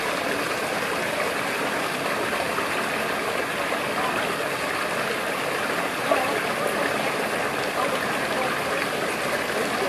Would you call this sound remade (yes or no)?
no